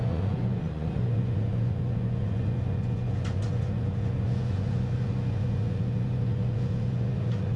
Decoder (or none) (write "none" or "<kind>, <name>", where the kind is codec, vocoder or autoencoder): vocoder, Vocos